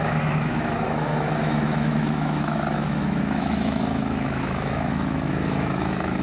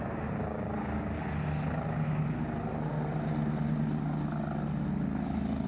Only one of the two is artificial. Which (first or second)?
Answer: first